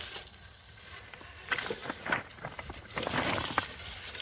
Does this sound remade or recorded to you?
recorded